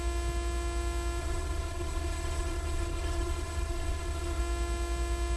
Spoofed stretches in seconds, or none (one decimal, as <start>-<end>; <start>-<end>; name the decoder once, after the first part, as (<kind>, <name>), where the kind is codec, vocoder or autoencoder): 1.2-4.4 (codec, HILCodec)